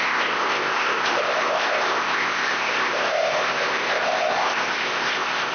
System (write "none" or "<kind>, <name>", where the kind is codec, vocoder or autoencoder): codec, ZipCodec